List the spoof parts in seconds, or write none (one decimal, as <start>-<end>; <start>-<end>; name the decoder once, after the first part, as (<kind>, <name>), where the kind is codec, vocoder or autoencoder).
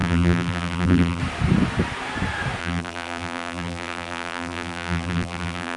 0.0-1.2 (vocoder, BigVGAN v2); 2.6-5.8